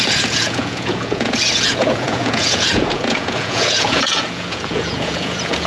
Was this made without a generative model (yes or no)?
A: no